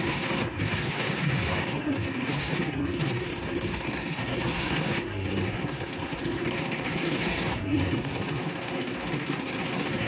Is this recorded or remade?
remade